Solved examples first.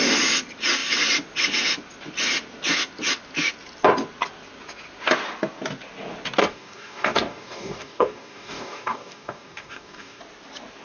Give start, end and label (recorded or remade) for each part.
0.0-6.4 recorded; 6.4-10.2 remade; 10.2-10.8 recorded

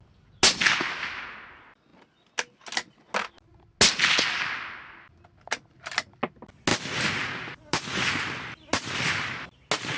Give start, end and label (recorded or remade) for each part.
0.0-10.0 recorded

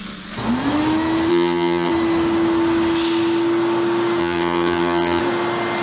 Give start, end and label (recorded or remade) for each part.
0.0-1.3 recorded; 1.3-1.9 remade; 1.9-4.2 recorded; 4.2-5.2 remade; 5.2-5.8 recorded

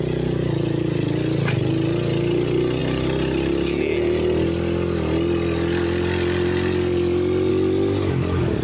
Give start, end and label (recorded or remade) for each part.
0.0-8.6 recorded

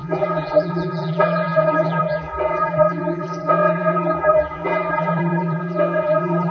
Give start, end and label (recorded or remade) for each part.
0.0-6.5 remade